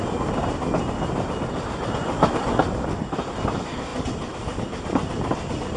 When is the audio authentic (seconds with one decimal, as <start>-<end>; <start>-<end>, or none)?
0.0-5.8